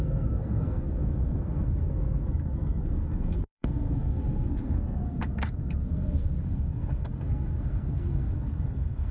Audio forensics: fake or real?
fake